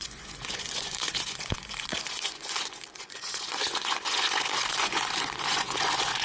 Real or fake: fake